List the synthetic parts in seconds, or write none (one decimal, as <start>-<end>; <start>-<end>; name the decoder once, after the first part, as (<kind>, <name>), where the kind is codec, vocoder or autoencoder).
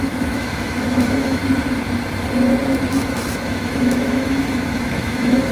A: 0.0-1.4 (autoencoder, DAC-VAE); 2.9-5.5